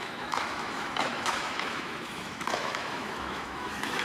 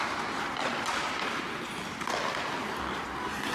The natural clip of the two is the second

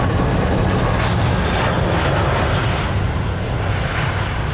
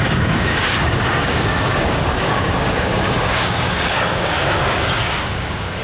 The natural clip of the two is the first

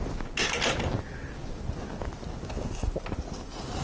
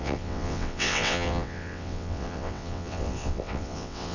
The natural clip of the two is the first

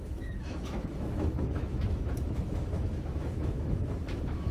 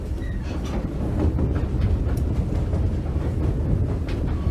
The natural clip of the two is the second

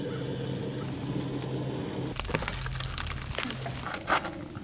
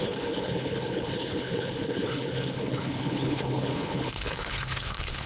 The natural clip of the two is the first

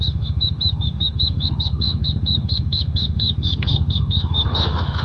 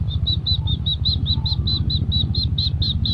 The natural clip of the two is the second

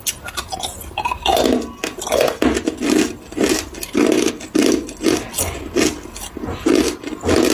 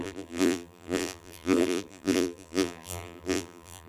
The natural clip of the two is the first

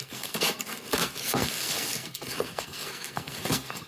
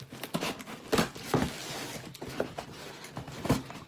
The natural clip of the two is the second